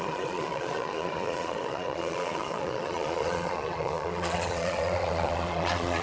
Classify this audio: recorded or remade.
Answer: remade